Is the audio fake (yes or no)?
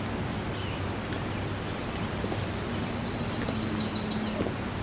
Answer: no